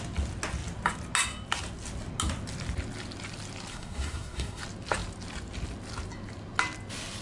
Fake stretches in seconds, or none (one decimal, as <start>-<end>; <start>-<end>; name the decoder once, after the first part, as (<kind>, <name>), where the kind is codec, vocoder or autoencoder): 3.7-4.6 (codec, SNAC)